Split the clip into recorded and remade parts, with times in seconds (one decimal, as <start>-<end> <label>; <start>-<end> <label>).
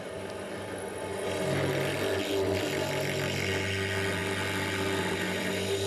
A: 0.0-5.9 recorded